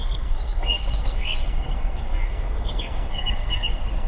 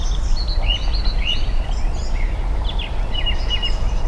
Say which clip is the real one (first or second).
second